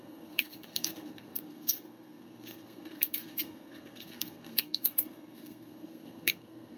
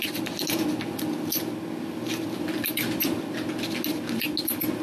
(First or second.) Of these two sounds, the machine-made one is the first